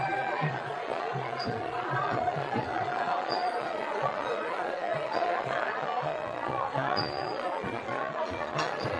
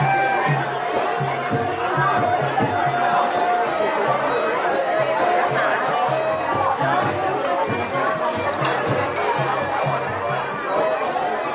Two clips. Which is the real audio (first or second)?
second